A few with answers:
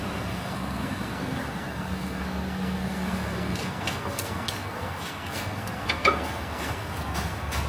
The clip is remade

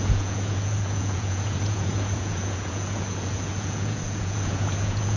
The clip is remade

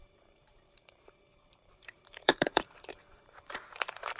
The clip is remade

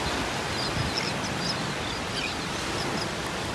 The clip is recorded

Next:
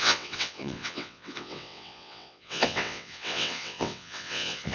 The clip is remade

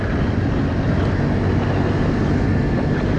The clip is recorded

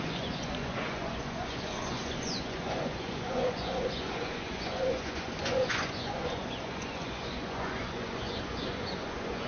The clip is remade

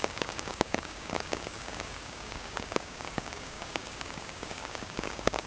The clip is remade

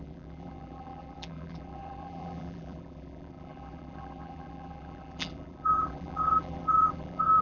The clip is remade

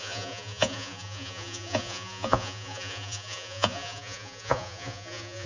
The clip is remade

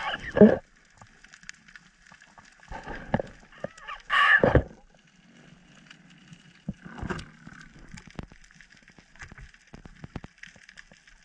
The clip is recorded